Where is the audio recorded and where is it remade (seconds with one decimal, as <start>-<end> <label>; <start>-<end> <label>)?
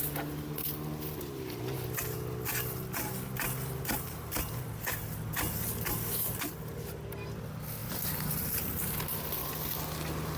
0.0-10.4 recorded